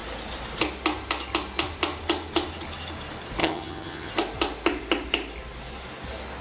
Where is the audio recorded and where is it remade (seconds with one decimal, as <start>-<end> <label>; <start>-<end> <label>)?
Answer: 0.0-3.4 recorded; 3.4-4.1 remade; 4.1-6.4 recorded